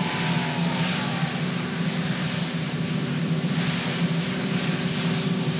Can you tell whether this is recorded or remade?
recorded